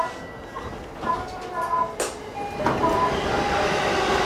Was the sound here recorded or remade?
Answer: recorded